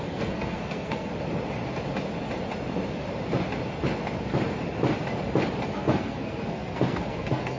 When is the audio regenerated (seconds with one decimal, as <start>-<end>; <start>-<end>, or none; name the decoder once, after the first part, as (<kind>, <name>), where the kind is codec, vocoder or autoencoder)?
0.0-1.1 (codec, SNAC); 5.7-7.6